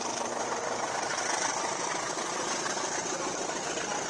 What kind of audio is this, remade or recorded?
recorded